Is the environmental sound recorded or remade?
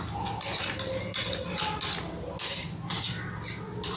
recorded